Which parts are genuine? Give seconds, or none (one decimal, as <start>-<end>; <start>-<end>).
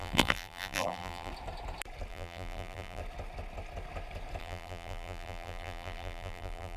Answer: 1.3-2.1; 3.0-4.4